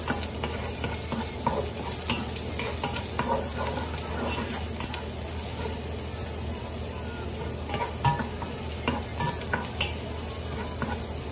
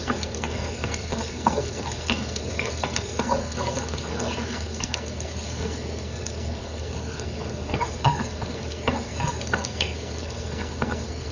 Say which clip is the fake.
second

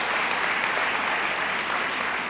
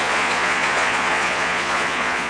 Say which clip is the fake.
second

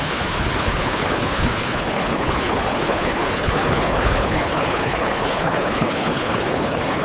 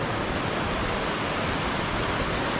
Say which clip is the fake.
first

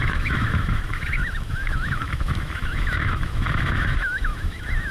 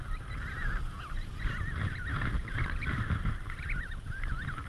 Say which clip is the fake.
first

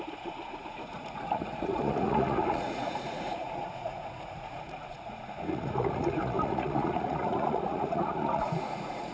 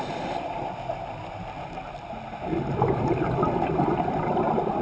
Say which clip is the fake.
first